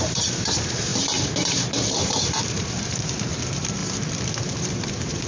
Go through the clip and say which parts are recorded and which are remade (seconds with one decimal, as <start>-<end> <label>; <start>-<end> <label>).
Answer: 0.0-3.8 remade; 3.8-4.4 recorded; 4.4-5.3 remade